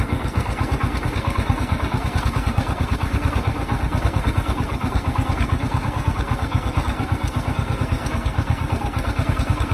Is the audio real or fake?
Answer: fake